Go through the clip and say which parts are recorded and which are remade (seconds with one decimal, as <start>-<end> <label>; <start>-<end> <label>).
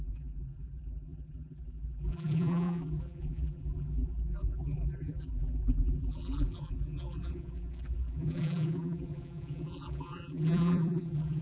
0.0-11.4 remade